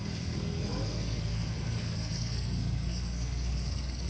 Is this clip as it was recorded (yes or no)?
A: no